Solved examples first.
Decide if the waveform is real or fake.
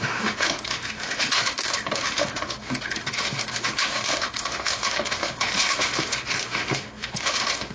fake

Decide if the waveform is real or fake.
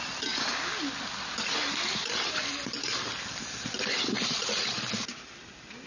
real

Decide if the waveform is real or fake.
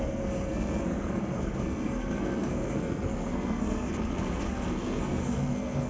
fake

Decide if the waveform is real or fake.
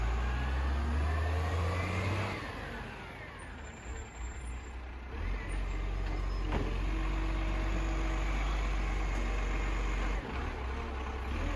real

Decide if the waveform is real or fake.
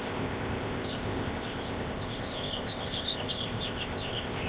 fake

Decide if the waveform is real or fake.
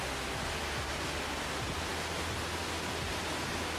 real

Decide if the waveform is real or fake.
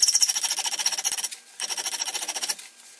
real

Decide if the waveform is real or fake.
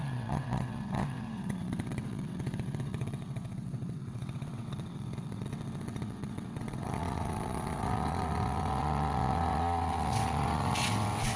fake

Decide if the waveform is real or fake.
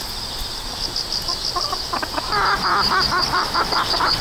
fake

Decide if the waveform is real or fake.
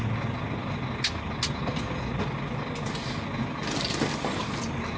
real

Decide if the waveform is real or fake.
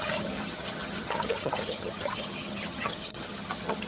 fake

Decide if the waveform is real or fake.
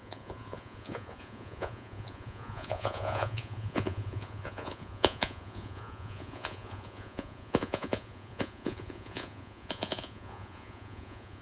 fake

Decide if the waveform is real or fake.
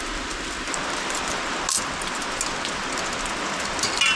real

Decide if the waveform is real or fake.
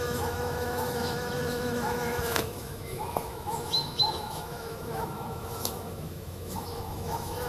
fake